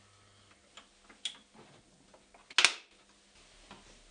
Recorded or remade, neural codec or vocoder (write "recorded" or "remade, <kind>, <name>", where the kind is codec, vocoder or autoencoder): recorded